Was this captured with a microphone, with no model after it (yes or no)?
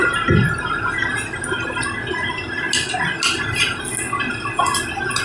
yes